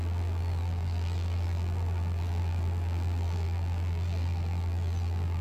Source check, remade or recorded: remade